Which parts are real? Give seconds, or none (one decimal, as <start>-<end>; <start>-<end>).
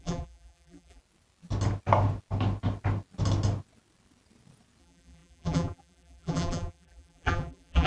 1.0-4.8